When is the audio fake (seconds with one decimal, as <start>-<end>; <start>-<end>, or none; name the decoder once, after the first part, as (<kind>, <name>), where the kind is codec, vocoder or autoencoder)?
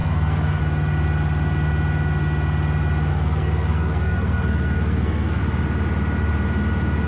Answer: 0.0-0.6 (codec, SNAC); 3.1-5.4